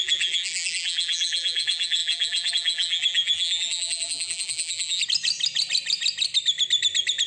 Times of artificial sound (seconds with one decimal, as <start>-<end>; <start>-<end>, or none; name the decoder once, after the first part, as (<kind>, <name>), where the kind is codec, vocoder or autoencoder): 0.0-5.0 (vocoder, BigVGAN v2)